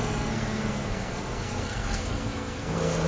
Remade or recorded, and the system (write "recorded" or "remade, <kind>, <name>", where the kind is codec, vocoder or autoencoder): remade, codec, SNAC